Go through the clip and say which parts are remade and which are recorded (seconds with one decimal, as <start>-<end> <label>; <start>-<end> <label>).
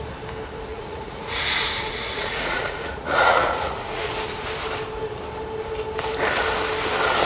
0.0-0.7 recorded; 0.7-4.1 remade; 4.1-7.3 recorded